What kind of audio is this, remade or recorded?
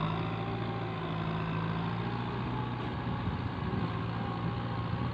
recorded